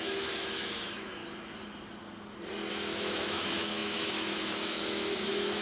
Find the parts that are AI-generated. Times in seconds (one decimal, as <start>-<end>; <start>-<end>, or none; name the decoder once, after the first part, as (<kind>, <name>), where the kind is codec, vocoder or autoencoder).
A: 0.0-1.2 (autoencoder, DAC-VAE); 2.7-5.6